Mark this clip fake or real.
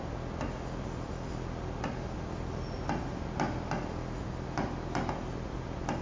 real